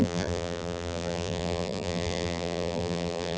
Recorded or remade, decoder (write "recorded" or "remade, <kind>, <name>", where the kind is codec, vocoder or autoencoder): remade, vocoder, BigVGAN v2